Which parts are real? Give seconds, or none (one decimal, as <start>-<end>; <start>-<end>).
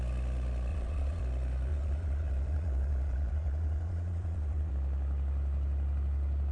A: 0.0-0.7; 1.2-1.7; 4.7-6.5